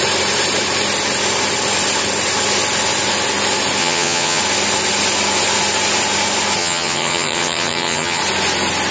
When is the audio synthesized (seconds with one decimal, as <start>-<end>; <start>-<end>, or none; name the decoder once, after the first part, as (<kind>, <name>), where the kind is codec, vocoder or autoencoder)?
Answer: 3.8-4.4 (vocoder, HiFi-GAN); 6.6-8.2